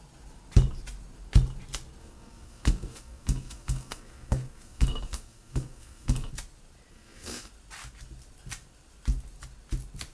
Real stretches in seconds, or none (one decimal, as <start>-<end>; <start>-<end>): 0.0-2.0; 6.3-6.9; 7.5-10.1